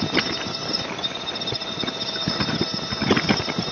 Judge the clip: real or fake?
real